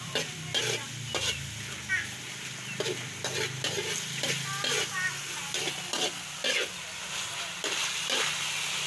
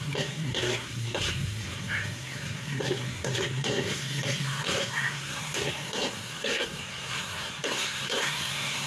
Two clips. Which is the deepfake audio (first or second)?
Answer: second